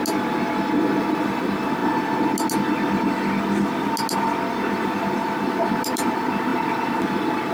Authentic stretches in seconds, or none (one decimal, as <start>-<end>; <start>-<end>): 0.0-0.8; 1.8-4.5

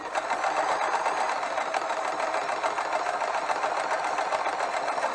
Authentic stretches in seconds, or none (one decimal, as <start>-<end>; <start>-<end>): 0.0-1.7

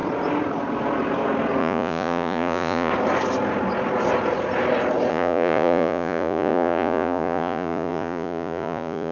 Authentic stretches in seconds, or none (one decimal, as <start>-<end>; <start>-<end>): 0.0-1.6; 2.9-5.1

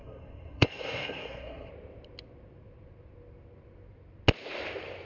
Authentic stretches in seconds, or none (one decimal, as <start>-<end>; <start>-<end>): 1.7-5.1

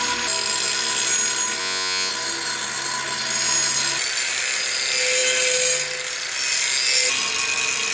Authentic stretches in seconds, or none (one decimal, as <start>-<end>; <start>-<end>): 0.0-1.6; 2.1-7.9

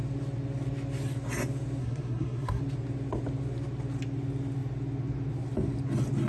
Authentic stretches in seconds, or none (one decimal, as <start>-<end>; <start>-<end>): 0.0-1.8; 2.6-6.3

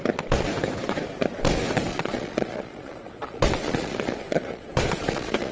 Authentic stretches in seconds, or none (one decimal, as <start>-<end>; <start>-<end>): 0.0-1.9

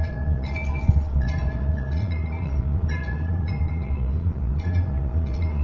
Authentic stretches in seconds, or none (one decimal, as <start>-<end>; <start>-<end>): none